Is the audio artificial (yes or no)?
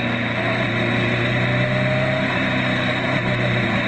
no